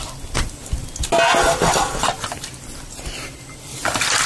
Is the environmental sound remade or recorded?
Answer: recorded